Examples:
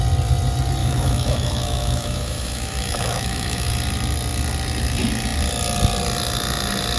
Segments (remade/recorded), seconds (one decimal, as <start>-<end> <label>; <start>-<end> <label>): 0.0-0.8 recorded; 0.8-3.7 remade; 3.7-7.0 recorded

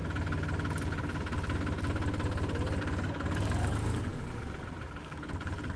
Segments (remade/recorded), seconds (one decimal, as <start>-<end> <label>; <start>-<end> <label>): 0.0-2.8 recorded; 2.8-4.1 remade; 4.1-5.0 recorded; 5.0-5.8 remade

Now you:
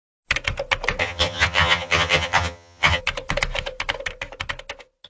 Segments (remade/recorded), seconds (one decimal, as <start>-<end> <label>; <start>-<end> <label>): 0.0-1.0 recorded; 1.0-3.0 remade; 3.0-5.1 recorded

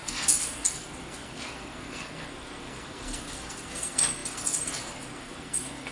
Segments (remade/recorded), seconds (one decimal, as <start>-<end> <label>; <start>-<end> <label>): 0.0-5.9 remade